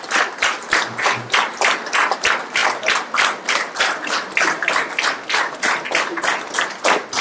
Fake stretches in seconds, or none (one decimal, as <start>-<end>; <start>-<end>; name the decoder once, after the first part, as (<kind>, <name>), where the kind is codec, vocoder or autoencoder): none